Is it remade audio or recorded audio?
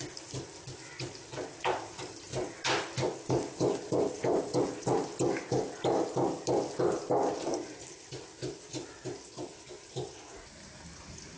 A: recorded